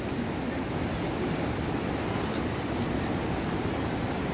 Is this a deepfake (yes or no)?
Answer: no